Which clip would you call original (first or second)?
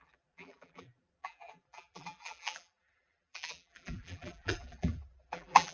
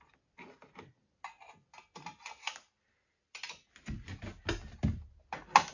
second